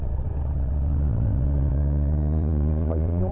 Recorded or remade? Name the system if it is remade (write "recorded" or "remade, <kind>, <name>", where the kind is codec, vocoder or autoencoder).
remade, vocoder, WaveNeXt